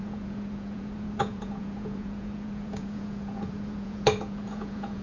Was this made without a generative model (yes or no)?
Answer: no